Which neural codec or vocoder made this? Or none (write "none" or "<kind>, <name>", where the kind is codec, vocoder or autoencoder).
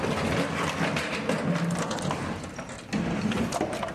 none